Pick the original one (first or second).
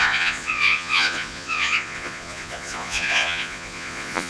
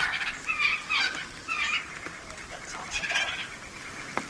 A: second